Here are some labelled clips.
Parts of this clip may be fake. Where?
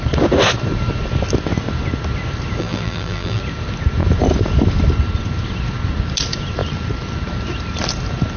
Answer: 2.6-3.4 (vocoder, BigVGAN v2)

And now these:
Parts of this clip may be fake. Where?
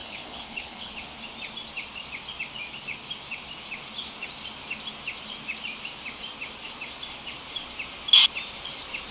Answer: 0.0-0.9 (codec, HILCodec)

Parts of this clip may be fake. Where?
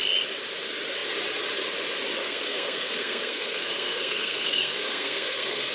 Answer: 2.2-5.7 (codec, SNAC)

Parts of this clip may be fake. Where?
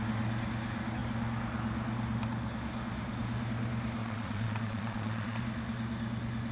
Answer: 4.0-5.4 (vocoder, Vocos)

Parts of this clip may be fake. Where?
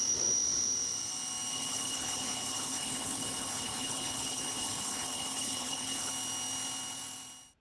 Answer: 1.5-6.1 (codec, HILCodec)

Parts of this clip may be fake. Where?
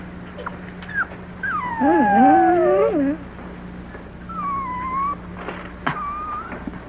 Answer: none